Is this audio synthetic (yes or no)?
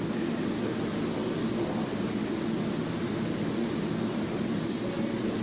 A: no